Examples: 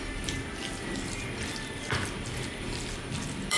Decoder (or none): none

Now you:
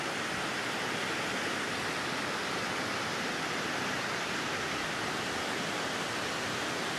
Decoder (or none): none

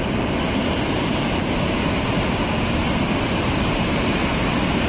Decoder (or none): none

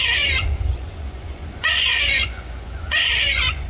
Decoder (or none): vocoder, Vocos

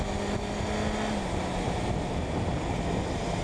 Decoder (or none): none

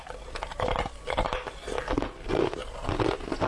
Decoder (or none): none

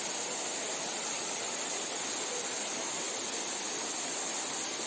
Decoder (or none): none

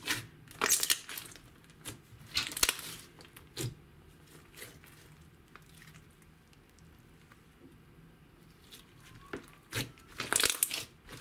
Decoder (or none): none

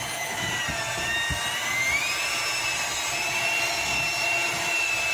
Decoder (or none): none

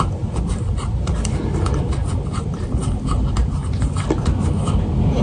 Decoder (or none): none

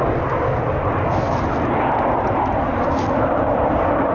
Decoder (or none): none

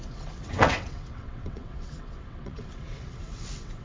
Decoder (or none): vocoder, WaveNeXt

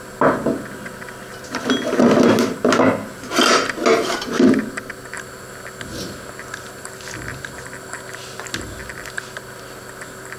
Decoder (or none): none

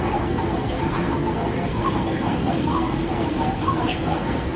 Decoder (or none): codec, SNAC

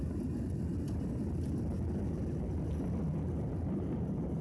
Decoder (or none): none